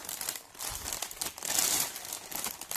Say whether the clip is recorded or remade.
recorded